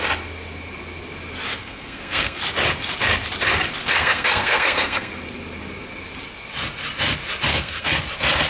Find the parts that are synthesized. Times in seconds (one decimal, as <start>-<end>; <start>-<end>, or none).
1.6-2.4; 3.8-5.1; 7.5-8.0